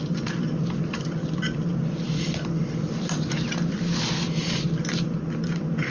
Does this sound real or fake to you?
fake